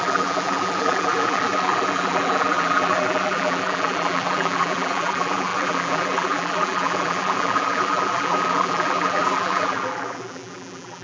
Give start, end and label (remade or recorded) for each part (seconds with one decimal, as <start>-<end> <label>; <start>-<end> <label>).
0.0-11.0 remade